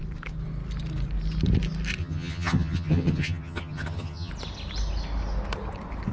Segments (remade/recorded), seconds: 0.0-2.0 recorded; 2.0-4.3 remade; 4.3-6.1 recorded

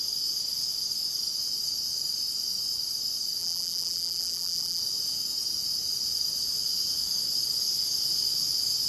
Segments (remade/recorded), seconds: 0.0-3.4 recorded; 3.4-4.8 remade; 4.8-8.9 recorded